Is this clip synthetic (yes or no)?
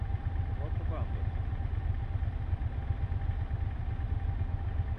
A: no